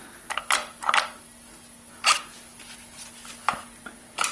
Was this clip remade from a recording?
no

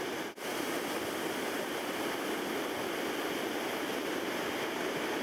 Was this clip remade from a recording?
no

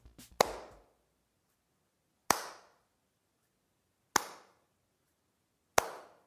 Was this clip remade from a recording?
no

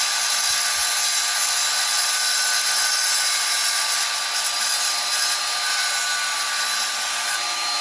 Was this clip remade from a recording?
no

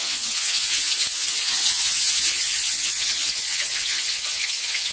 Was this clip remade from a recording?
yes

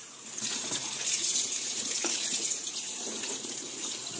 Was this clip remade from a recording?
yes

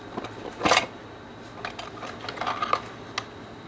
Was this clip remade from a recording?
no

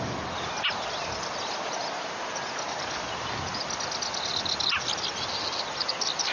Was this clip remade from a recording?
no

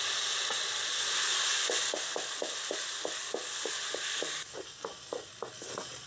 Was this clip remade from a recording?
no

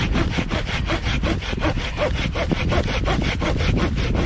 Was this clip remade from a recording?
no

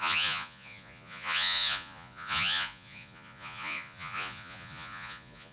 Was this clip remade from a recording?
yes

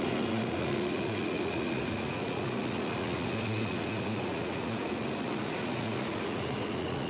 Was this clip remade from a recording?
yes